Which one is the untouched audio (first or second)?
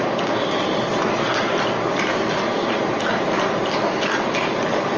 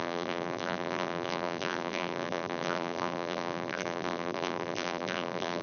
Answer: first